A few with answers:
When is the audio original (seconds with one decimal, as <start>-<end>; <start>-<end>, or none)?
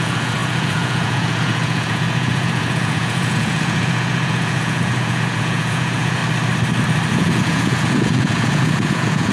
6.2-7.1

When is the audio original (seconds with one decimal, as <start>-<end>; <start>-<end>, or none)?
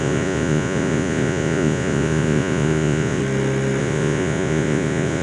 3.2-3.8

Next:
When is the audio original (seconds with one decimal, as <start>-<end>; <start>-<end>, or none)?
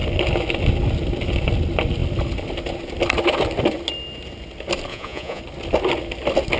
0.0-4.9; 5.4-6.6